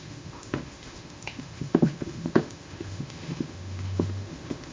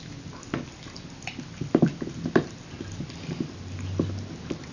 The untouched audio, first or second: second